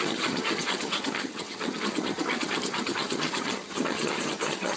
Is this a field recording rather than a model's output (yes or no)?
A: no